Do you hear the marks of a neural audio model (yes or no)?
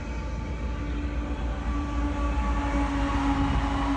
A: no